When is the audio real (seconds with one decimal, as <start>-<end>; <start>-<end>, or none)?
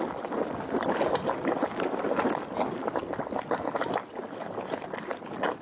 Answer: 0.0-5.6